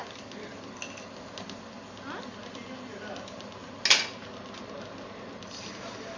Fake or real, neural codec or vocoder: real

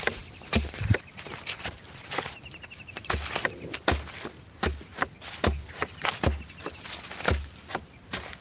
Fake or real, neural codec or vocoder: real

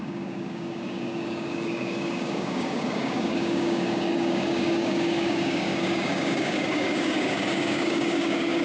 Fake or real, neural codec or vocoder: fake, codec, DAC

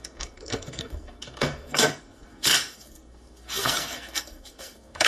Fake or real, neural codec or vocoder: fake, codec, SNAC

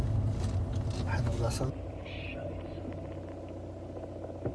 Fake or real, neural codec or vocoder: real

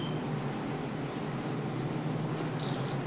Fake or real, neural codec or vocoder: real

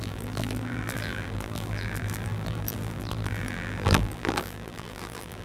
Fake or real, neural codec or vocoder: fake, vocoder, BigVGAN v2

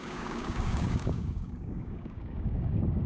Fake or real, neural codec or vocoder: fake, codec, DAC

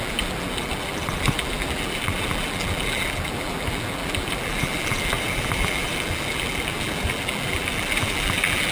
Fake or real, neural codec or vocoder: fake, vocoder, BigVGAN v2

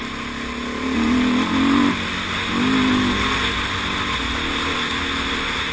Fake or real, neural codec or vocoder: real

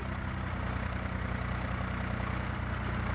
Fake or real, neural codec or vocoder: real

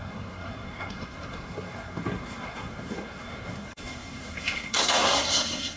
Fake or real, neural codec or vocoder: fake, codec, SNAC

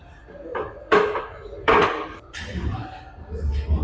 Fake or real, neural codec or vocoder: fake, vocoder, BigVGAN v2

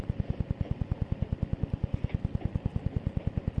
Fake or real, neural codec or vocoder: real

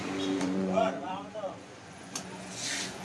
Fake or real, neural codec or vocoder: fake, vocoder, Vocos